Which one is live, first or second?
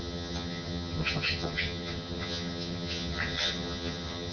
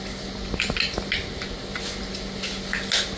second